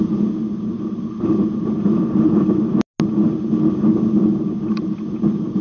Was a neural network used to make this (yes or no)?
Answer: no